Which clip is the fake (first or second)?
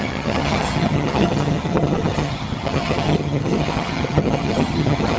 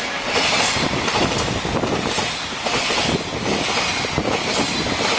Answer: first